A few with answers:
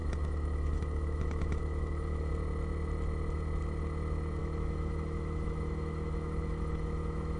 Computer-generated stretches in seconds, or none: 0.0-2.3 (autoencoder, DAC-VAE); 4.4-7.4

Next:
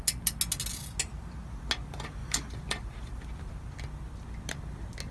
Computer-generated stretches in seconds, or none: 2.2-3.5 (vocoder, BigVGAN v2)